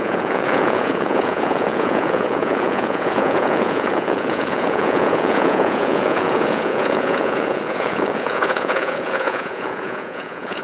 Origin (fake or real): fake